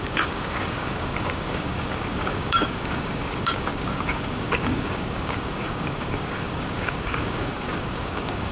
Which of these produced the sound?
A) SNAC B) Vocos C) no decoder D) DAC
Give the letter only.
D